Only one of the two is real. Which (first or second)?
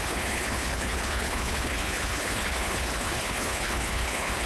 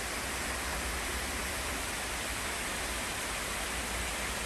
second